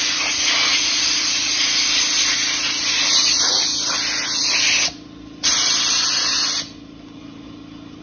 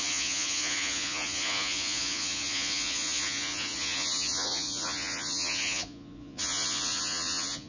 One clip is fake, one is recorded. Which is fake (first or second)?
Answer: second